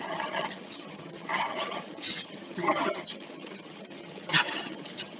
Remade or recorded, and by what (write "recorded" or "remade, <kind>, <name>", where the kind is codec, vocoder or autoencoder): remade, vocoder, HiFi-GAN